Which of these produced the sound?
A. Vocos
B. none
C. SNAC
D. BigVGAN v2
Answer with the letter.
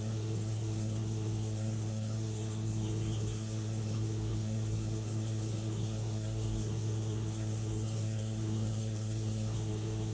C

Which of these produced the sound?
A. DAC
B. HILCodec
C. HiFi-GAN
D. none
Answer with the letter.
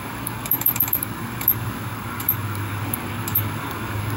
A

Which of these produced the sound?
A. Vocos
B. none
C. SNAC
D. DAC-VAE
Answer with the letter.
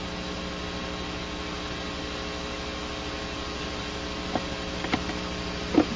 B